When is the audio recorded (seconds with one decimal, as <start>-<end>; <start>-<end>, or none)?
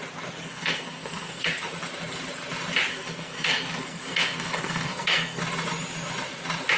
0.0-0.4; 1.5-2.9; 5.4-6.8